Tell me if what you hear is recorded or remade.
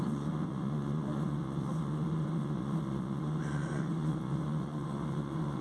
remade